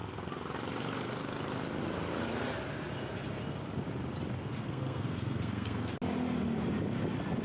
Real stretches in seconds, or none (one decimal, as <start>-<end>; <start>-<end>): 0.0-4.4; 6.0-7.4